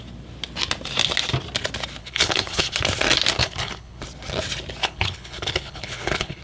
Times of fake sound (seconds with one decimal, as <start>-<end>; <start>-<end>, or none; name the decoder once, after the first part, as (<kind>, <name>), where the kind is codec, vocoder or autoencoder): 2.0-2.8 (codec, HILCodec); 3.4-4.0; 4.8-6.4